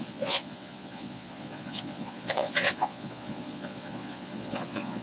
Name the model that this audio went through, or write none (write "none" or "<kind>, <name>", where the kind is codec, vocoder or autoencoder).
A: vocoder, Vocos